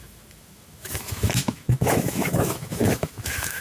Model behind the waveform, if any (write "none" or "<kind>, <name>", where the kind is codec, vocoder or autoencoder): autoencoder, DAC-VAE